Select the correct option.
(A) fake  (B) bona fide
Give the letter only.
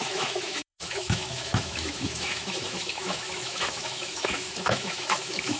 A